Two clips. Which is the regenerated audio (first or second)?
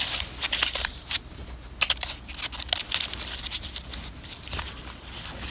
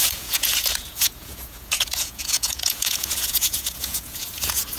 second